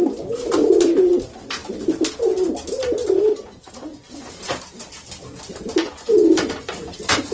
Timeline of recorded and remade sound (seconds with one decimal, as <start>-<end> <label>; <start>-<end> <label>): 0.0-3.3 recorded; 3.3-4.3 remade; 4.3-5.8 recorded; 5.8-6.7 remade; 6.7-7.3 recorded